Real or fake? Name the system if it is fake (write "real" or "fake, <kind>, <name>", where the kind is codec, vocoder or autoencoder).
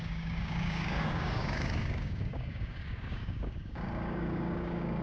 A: fake, codec, DAC